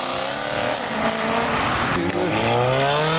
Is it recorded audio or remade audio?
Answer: recorded